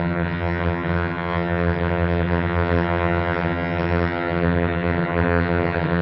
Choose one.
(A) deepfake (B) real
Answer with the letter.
A